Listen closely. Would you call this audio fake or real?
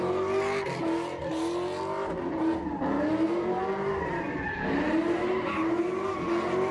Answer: real